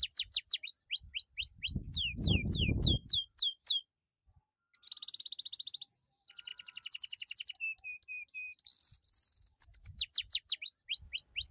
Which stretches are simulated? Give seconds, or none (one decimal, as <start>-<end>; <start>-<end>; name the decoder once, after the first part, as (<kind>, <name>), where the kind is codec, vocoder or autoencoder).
none